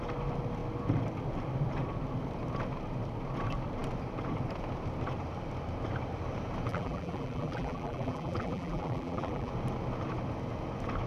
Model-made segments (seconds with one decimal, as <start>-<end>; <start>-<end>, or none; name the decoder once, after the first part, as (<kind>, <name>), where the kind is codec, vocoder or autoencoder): 6.7-9.5 (vocoder, BigVGAN v2)